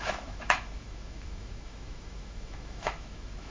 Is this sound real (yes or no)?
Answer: no